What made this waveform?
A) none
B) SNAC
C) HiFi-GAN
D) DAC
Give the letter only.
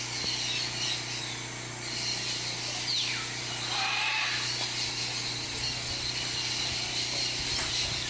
A